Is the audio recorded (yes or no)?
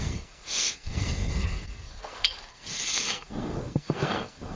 no